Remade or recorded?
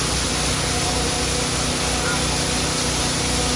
recorded